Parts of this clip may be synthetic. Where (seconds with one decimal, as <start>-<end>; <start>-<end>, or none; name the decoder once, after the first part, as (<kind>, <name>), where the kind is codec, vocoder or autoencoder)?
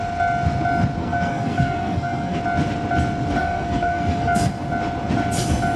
1.0-2.4 (codec, SNAC); 3.4-4.5